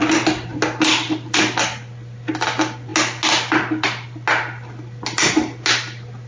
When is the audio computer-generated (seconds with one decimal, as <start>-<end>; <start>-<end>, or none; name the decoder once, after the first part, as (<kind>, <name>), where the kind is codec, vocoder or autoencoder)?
none

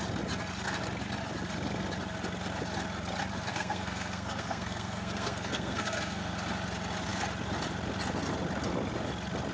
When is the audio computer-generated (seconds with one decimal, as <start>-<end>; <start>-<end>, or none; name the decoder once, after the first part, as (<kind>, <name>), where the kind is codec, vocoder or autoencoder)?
3.5-6.3 (codec, SNAC)

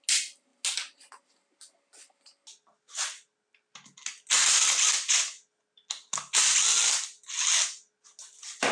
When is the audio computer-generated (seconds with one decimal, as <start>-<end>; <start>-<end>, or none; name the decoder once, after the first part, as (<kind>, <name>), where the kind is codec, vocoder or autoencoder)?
none

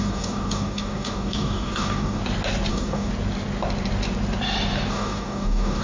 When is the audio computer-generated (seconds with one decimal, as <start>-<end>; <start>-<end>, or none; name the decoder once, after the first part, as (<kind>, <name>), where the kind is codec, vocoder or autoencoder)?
0.0-2.2 (codec, DAC); 2.7-3.1; 4.9-5.8

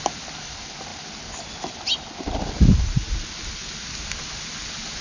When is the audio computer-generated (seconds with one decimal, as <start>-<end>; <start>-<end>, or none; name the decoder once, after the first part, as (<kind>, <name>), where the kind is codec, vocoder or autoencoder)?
none

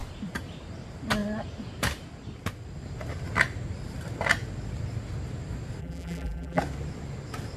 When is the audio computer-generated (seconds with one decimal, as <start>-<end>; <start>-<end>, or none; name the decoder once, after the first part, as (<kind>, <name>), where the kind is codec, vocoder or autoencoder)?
5.8-6.6 (vocoder, BigVGAN v2)